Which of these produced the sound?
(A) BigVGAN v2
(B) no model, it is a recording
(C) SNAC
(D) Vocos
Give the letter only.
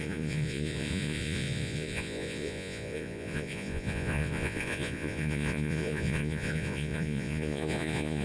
D